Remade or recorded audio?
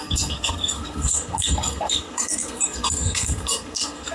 remade